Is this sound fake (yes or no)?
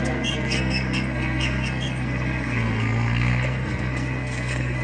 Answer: yes